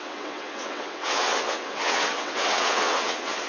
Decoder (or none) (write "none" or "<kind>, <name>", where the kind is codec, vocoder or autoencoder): vocoder, WaveNeXt